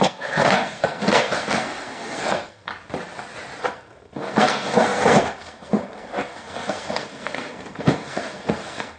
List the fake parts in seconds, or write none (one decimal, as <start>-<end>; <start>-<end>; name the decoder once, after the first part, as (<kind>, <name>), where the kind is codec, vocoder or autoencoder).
0.0-2.7 (codec, SNAC); 3.6-9.0